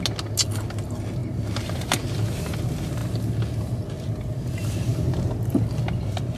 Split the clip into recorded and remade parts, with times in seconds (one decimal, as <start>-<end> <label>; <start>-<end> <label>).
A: 0.0-6.4 recorded

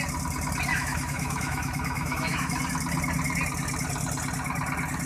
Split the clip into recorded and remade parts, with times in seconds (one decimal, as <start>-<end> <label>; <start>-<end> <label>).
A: 0.0-0.7 recorded; 0.7-2.6 remade; 2.6-5.1 recorded

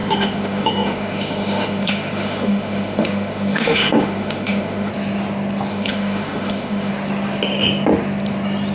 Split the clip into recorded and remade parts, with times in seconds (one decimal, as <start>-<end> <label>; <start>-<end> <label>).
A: 0.0-4.9 remade; 4.9-5.7 recorded; 5.7-6.9 remade; 6.9-8.7 recorded